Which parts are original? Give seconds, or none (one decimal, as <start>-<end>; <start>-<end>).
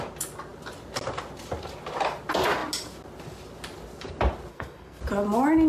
0.0-4.5; 5.0-5.7